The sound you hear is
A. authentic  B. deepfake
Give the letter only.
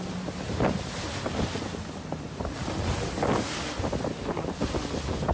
A